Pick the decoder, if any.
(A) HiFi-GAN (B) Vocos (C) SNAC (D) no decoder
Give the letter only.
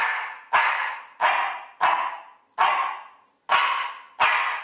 D